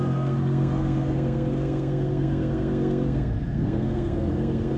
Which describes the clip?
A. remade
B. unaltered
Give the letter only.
A